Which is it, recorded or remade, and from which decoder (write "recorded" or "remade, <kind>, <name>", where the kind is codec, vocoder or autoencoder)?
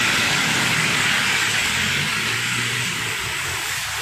remade, codec, DAC